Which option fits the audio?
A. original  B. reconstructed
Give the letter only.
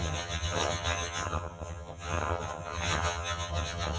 B